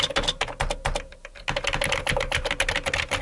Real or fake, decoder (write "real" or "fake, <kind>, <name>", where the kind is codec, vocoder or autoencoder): real